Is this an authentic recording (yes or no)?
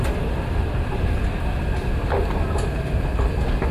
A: yes